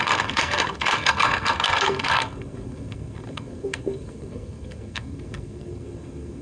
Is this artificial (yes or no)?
yes